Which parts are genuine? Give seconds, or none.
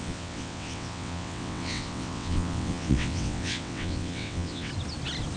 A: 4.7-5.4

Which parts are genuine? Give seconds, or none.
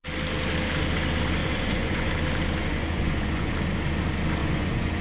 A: 0.0-1.4; 2.1-2.6; 3.5-4.4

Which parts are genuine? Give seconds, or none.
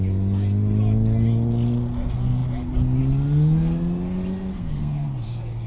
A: 0.0-4.5; 5.1-5.7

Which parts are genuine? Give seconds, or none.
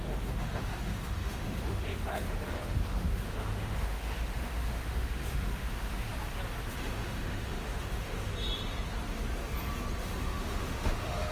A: 6.1-6.6; 8.3-10.0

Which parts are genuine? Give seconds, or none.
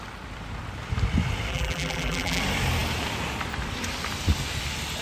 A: 0.0-1.5; 2.4-5.0